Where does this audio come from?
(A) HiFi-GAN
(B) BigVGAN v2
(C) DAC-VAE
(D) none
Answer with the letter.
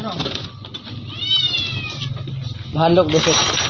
D